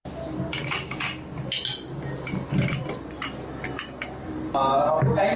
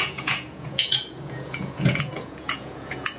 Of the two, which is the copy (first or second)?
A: second